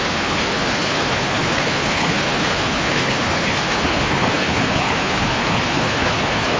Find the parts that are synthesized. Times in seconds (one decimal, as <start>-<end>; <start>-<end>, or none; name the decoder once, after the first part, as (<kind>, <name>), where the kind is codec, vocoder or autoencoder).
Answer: 0.0-6.6 (codec, HILCodec)